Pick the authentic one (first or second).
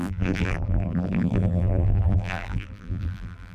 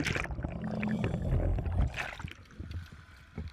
second